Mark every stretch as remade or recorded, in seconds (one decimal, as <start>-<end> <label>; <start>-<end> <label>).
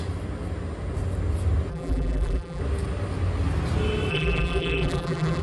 0.0-1.7 recorded; 1.7-2.6 remade; 2.6-4.1 recorded; 4.1-5.4 remade